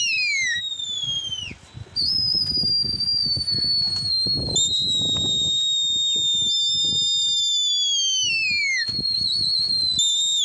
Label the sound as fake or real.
real